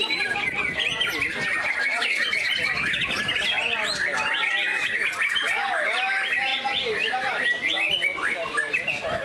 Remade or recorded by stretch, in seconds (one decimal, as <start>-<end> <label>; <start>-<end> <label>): 0.0-2.0 recorded; 2.0-3.0 remade; 3.0-4.7 recorded; 4.7-5.7 remade; 5.7-9.2 recorded